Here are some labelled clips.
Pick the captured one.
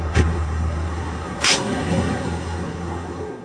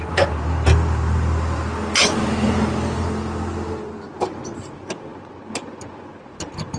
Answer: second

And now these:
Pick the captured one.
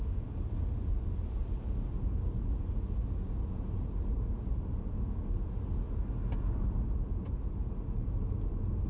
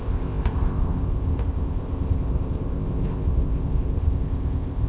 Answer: first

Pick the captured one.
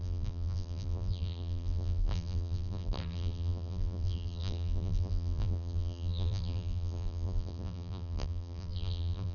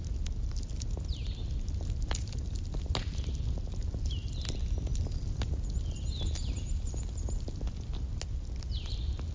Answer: second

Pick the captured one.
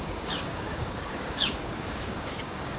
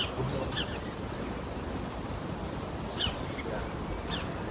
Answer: second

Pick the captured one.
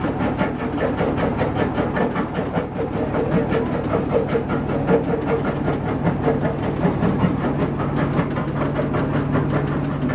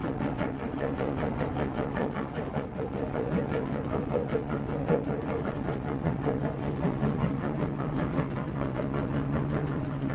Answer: first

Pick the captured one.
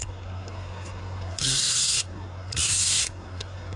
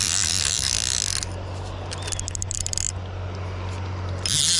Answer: second